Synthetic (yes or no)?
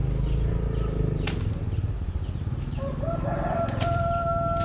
no